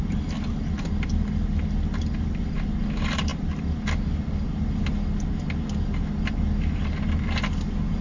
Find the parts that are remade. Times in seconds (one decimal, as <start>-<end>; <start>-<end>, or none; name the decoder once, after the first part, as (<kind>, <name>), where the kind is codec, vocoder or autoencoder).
none